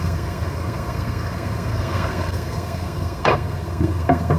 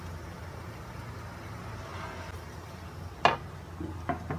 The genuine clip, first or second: second